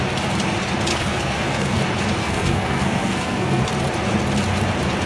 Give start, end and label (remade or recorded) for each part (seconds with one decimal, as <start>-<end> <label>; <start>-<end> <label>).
0.0-0.9 recorded; 0.9-1.8 remade; 1.8-2.2 recorded; 2.2-3.6 remade; 3.6-5.1 recorded